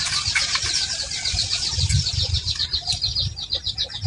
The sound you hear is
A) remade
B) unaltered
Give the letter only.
B